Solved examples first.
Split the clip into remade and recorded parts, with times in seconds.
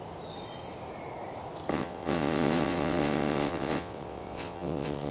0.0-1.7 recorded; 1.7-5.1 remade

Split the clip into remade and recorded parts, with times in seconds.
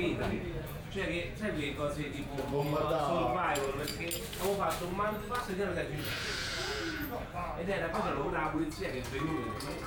0.0-3.9 remade; 3.9-5.4 recorded; 5.4-9.9 remade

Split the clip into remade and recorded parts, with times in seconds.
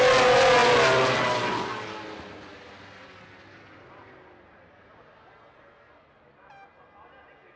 0.0-7.6 recorded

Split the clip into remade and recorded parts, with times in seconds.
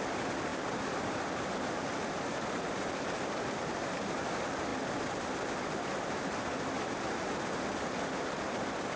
0.0-9.0 recorded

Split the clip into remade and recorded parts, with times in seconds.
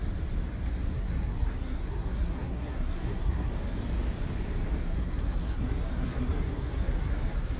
0.0-0.7 recorded; 0.7-3.5 remade; 3.5-4.8 recorded; 4.8-7.6 remade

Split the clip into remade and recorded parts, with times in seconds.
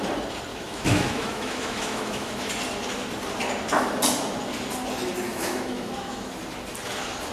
0.0-0.5 recorded; 0.5-2.5 remade; 2.5-5.3 recorded; 5.3-6.3 remade; 6.3-7.3 recorded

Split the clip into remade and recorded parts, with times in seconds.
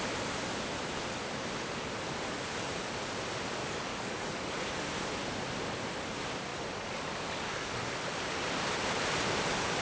0.0-3.6 recorded; 3.6-4.7 remade; 4.7-6.5 recorded; 6.5-7.7 remade; 7.7-9.8 recorded